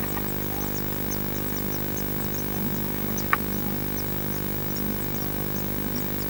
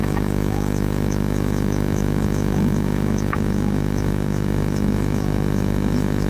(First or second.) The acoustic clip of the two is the first